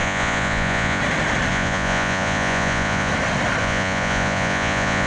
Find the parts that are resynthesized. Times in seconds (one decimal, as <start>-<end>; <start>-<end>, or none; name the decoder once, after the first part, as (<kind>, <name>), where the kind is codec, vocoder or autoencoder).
0.0-1.0 (vocoder, Vocos); 1.5-3.1; 3.6-5.1

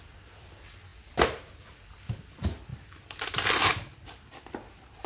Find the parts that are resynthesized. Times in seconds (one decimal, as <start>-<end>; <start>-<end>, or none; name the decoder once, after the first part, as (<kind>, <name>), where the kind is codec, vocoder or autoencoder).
none

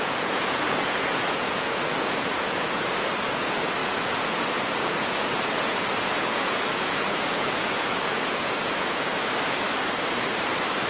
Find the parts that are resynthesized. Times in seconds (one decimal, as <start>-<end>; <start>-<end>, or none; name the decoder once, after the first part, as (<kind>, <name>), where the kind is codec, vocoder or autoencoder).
0.0-9.2 (vocoder, Vocos)

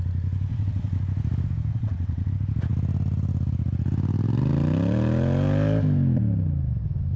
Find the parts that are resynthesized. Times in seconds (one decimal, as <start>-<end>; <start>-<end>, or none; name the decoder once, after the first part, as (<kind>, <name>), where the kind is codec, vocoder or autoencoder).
0.5-1.0 (vocoder, WaveNeXt); 1.7-2.3

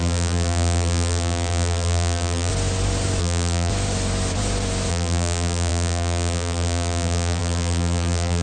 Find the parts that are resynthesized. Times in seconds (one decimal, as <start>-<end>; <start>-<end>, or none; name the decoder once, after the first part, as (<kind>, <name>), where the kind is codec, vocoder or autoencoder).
0.0-2.5 (vocoder, BigVGAN v2); 3.2-3.7; 4.9-8.4